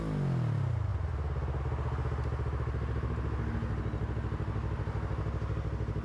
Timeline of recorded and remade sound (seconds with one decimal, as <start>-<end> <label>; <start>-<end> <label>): 0.0-6.0 recorded